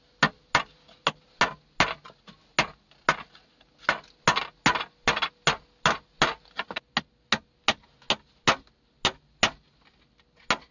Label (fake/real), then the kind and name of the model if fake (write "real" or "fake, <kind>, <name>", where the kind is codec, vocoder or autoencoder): real